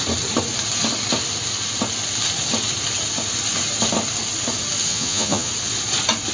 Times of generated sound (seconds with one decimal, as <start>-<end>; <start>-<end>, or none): 4.9-5.5